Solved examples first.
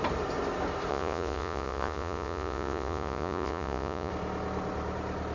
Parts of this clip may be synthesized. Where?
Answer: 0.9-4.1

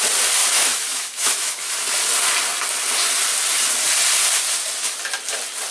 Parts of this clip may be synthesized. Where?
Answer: 0.4-1.7

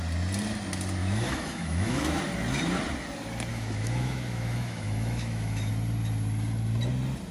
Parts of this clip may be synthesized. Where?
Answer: 1.0-2.2; 3.5-5.7

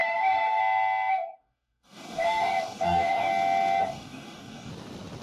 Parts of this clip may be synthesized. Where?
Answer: 0.0-0.6; 1.1-3.3; 3.8-4.7

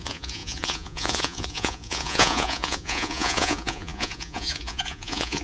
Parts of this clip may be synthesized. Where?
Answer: 0.0-5.4